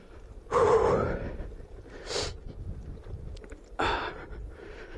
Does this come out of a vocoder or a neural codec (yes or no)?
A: yes